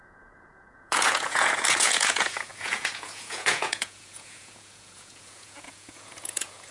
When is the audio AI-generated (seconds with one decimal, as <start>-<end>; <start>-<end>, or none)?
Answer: 0.0-6.7